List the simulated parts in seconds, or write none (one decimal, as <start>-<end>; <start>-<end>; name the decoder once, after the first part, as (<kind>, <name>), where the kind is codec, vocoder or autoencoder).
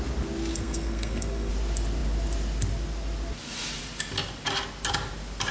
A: 0.5-1.5 (codec, SNAC)